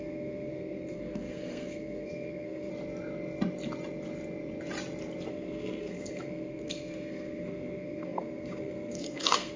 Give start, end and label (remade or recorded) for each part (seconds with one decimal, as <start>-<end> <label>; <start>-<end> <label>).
0.0-2.7 remade; 2.7-5.3 recorded; 5.3-9.6 remade